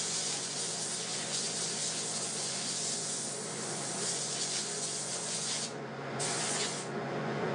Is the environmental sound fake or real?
fake